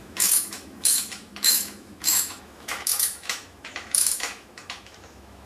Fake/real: fake